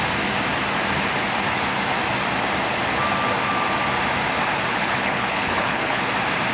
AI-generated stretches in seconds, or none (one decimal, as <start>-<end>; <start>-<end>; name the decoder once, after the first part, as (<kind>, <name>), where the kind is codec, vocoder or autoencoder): 4.7-6.0 (codec, HILCodec)